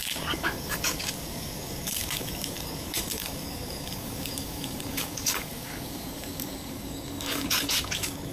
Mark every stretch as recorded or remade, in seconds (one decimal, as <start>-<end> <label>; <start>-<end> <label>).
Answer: 0.0-8.3 remade